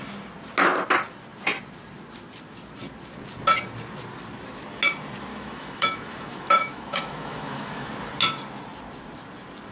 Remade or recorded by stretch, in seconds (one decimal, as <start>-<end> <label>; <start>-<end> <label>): 0.0-5.3 recorded; 5.3-7.9 remade; 7.9-9.7 recorded

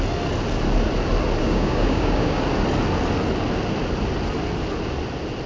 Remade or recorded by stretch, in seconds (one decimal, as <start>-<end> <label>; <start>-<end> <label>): 0.0-1.4 recorded; 1.4-2.4 remade; 2.4-5.5 recorded

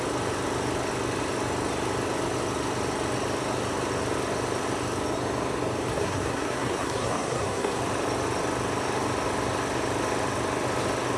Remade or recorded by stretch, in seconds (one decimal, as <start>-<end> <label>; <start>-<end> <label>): 0.0-5.9 recorded; 5.9-7.8 remade; 7.8-11.2 recorded

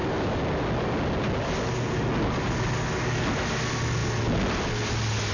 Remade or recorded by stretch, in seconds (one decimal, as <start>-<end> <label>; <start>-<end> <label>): 0.0-5.3 recorded

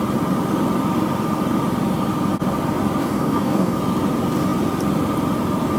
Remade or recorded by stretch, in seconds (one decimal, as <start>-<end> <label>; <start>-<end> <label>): 0.0-3.0 recorded; 3.0-3.8 remade; 3.8-5.8 recorded

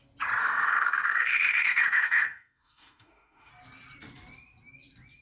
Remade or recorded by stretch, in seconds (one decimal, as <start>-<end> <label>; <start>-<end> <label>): 0.0-0.4 recorded; 0.4-3.5 remade; 3.5-5.2 recorded

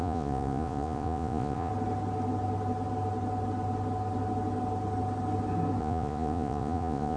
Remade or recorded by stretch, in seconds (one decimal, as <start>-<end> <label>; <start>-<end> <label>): 0.0-1.7 remade; 1.7-5.8 recorded; 5.8-7.2 remade